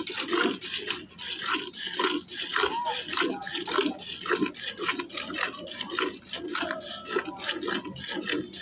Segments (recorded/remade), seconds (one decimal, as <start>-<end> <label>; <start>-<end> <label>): 0.0-8.6 recorded